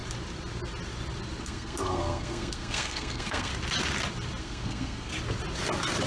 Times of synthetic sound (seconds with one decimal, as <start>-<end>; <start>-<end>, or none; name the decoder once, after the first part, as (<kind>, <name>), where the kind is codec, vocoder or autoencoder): 1.4-3.5 (codec, SNAC); 4.4-5.1